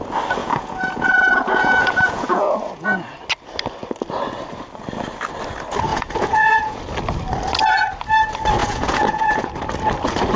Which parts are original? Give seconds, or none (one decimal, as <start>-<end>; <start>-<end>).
0.0-0.4; 3.2-5.9; 6.8-8.6; 9.5-10.4